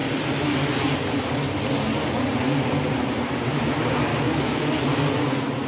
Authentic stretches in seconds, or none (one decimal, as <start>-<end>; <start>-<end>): 0.0-4.1; 4.6-5.7